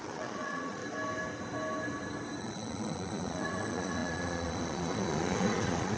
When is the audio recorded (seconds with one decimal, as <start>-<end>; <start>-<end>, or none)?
0.8-2.4